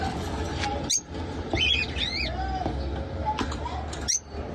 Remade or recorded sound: recorded